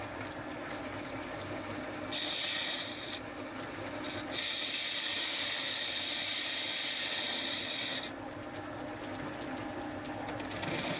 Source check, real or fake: real